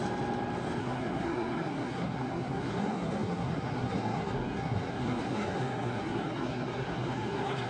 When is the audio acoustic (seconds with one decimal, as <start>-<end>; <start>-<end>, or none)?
0.0-0.8